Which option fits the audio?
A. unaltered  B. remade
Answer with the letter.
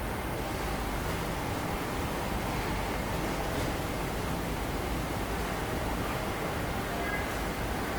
A